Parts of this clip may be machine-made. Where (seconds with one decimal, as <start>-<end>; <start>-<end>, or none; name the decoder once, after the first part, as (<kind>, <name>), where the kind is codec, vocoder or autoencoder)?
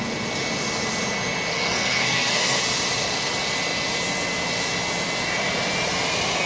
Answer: 1.5-2.6 (codec, SNAC)